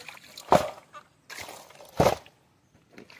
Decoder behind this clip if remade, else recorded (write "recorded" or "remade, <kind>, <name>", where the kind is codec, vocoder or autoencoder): recorded